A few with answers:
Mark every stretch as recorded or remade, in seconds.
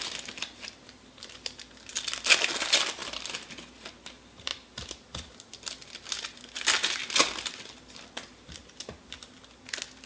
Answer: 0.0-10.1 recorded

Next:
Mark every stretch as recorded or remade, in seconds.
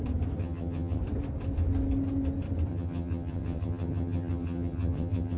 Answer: 0.0-0.4 recorded; 0.4-1.0 remade; 1.0-2.7 recorded; 2.7-5.4 remade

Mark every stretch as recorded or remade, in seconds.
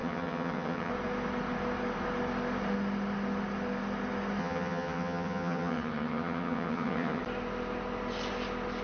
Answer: 0.0-0.9 remade; 0.9-4.4 recorded; 4.4-7.2 remade; 7.2-8.8 recorded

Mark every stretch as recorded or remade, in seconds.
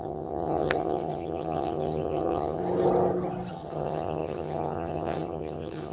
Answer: 0.0-2.6 remade; 2.6-3.5 recorded; 3.5-5.9 remade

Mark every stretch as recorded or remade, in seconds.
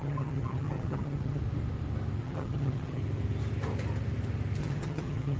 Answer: 0.0-1.4 remade; 1.4-2.2 recorded; 2.2-3.0 remade; 3.0-4.6 recorded; 4.6-5.4 remade